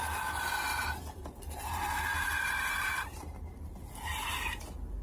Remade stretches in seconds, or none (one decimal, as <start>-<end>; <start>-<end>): 0.7-1.9; 2.3-4.6